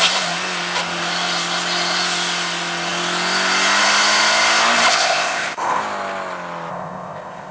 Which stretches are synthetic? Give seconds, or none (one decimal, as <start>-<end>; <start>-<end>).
4.9-5.8; 6.7-7.5